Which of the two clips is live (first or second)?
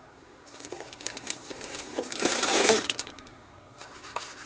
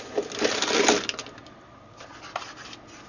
second